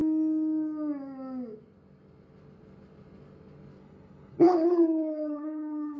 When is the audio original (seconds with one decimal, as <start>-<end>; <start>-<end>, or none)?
0.0-3.8